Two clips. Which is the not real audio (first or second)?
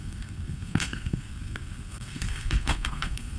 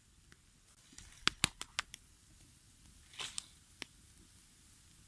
first